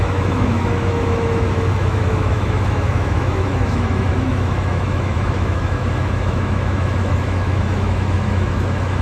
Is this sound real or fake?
fake